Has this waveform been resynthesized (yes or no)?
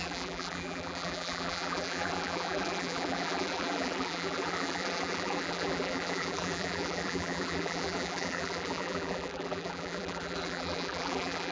yes